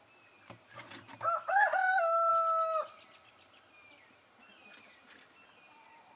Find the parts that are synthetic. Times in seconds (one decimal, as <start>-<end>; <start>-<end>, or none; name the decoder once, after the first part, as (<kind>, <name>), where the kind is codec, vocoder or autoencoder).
1.8-2.3 (autoencoder, DAC-VAE)